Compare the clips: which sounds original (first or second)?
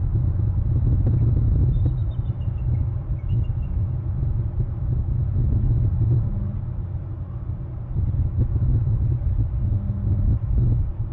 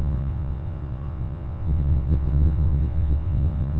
first